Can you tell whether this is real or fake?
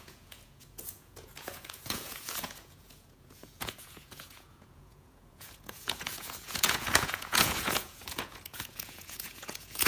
fake